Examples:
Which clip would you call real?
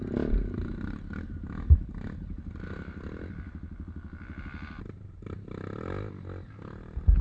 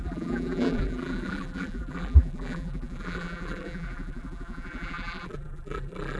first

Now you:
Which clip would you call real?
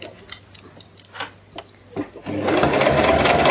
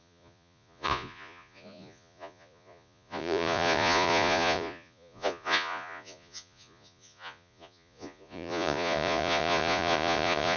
first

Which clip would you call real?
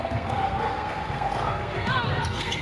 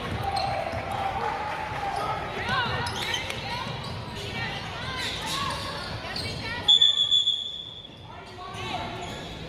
second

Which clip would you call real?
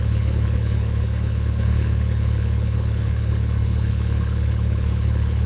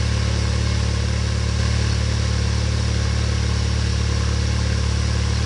second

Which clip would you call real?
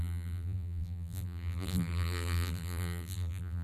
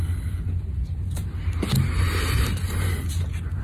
second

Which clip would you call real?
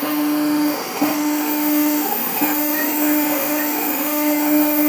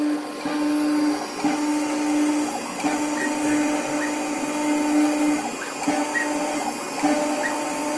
second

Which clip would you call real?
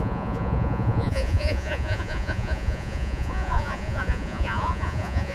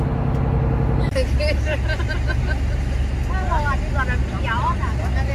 second